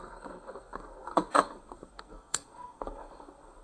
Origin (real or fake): fake